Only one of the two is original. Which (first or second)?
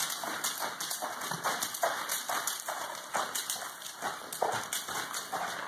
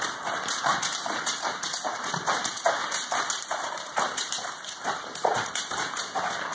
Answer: first